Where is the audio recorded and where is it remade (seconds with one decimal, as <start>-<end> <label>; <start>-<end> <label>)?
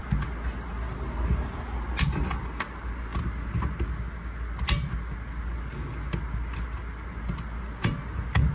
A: 0.0-8.5 recorded